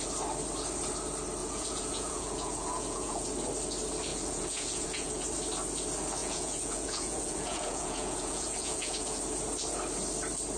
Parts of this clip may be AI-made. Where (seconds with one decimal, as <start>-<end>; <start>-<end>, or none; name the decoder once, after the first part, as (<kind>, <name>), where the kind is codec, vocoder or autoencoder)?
1.4-3.3 (vocoder, Vocos); 4.1-5.2; 6.2-9.2